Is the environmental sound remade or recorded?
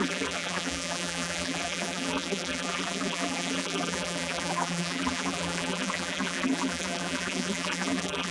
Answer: remade